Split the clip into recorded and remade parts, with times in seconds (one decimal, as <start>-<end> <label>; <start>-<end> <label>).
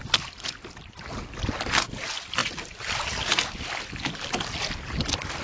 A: 0.0-2.4 recorded; 2.4-3.2 remade; 3.2-5.4 recorded